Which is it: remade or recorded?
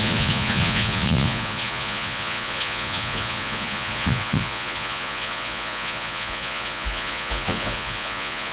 remade